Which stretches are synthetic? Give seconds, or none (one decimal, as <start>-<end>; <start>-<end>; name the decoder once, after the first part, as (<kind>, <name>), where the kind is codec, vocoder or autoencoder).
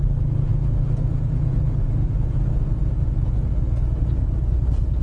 0.5-3.5 (vocoder, Vocos)